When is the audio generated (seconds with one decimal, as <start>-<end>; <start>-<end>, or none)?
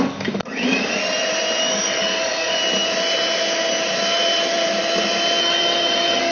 0.0-1.0; 1.6-2.6; 5.4-6.3